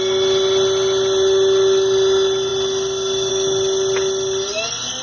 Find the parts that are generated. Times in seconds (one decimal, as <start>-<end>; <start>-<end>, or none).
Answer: none